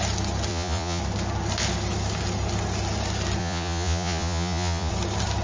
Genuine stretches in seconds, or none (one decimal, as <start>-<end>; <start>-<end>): 0.0-0.5; 1.0-3.4; 4.9-5.4